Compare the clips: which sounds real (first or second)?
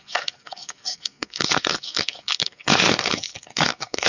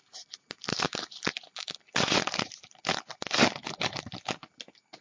second